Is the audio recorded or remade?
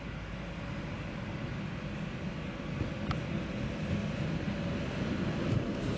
recorded